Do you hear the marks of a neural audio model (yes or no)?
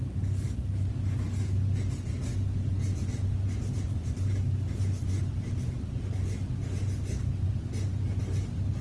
no